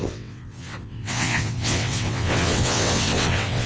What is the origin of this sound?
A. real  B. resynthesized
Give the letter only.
B